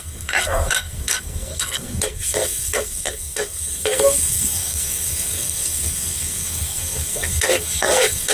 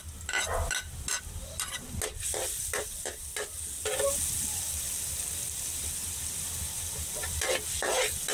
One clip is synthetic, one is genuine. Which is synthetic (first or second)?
first